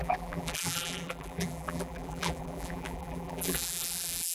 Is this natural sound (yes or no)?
no